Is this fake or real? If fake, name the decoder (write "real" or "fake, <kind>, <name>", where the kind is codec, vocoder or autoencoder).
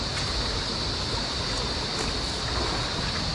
real